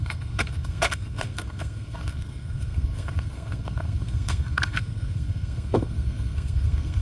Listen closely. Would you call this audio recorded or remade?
remade